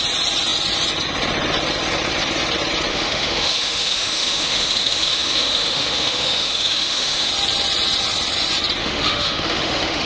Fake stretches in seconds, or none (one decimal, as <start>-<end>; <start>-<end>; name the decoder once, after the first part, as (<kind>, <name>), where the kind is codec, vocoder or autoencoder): 2.9-7.3 (autoencoder, DAC-VAE); 8.8-10.1